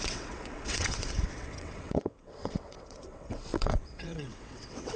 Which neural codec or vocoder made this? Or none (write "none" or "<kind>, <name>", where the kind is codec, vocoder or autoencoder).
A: vocoder, WaveNeXt